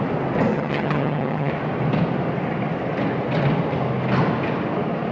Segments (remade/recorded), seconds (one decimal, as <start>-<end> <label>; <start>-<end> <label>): 0.0-0.5 recorded; 0.5-1.5 remade; 1.5-5.1 recorded